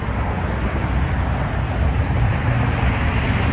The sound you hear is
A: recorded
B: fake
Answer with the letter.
A